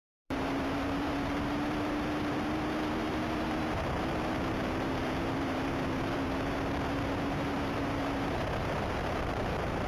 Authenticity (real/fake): fake